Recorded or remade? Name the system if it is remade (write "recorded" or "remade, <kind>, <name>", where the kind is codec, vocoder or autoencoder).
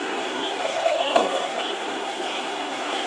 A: remade, codec, SNAC